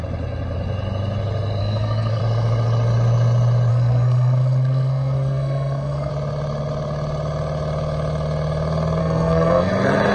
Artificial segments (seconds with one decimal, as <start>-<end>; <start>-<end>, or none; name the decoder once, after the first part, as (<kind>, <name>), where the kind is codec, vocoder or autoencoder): 1.6-2.2 (codec, SNAC); 3.7-6.1; 9.0-9.7